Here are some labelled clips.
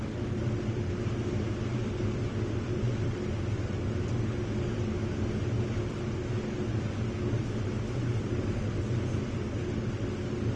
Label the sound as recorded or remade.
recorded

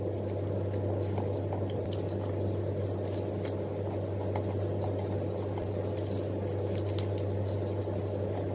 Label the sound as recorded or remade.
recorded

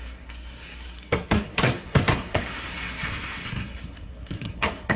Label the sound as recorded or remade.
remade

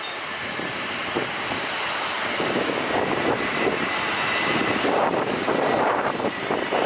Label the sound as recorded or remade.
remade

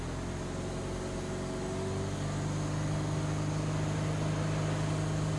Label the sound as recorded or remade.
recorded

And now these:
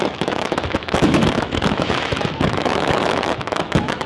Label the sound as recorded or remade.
remade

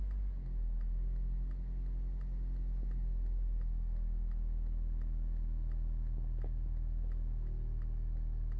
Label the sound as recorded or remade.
recorded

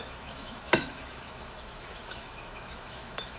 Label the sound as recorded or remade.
remade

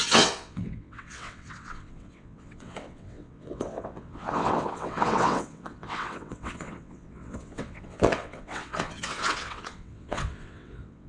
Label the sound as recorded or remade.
remade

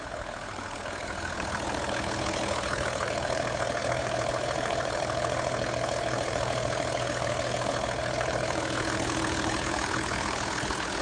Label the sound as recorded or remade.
remade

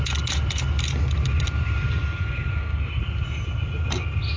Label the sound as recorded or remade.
recorded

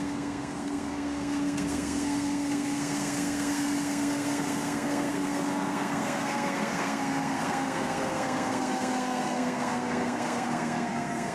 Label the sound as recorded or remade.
remade